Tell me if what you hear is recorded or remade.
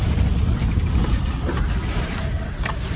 remade